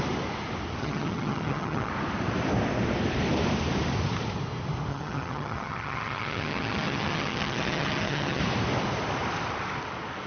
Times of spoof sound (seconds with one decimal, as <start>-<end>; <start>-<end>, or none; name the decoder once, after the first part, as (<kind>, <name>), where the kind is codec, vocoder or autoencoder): 0.8-1.9 (vocoder, HiFi-GAN); 4.9-8.4